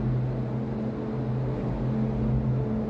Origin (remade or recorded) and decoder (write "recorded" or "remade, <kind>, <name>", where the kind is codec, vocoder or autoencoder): recorded